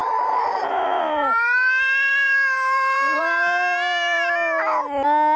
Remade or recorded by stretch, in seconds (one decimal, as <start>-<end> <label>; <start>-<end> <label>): 0.0-3.2 remade; 3.2-5.4 recorded

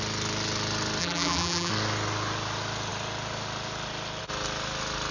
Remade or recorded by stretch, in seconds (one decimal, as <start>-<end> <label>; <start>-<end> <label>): 0.0-1.0 recorded; 1.0-1.7 remade; 1.7-5.1 recorded

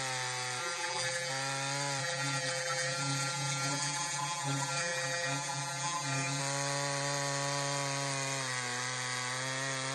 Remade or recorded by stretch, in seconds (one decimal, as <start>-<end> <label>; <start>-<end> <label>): 0.0-0.6 recorded; 0.6-1.3 remade; 1.3-2.0 recorded; 2.0-6.4 remade; 6.4-9.9 recorded

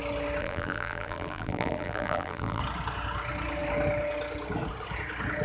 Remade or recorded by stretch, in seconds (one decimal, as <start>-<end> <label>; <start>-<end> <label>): 0.0-0.4 recorded; 0.4-2.6 remade; 2.6-5.4 recorded

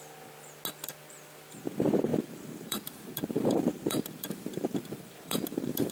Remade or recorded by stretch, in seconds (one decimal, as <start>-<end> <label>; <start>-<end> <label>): 0.0-2.1 recorded; 2.1-5.9 remade

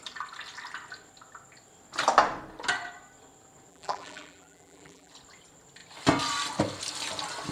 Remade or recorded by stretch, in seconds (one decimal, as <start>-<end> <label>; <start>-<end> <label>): 0.0-3.7 recorded; 3.7-5.1 remade; 5.1-7.5 recorded

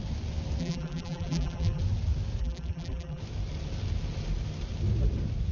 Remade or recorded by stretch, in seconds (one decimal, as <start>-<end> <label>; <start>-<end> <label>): 0.0-0.6 recorded; 0.6-1.8 remade; 1.8-2.4 recorded; 2.4-3.2 remade; 3.2-5.5 recorded